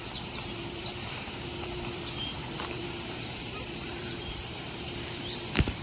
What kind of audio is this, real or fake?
fake